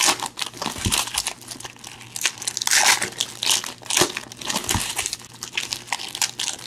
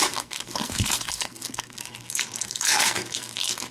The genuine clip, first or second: first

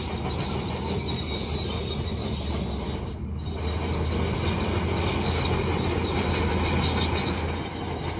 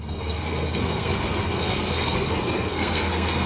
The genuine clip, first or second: first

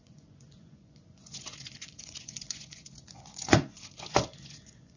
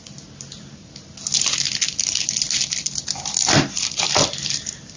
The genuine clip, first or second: second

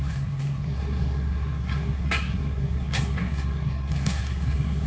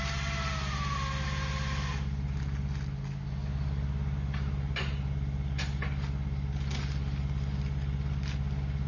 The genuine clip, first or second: second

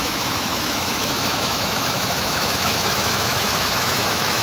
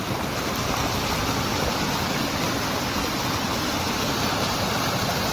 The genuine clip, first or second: second